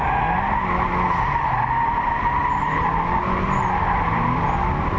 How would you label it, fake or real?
real